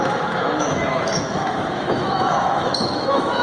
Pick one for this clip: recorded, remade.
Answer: remade